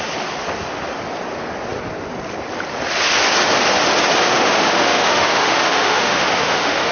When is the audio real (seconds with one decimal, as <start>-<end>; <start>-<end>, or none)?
0.0-4.2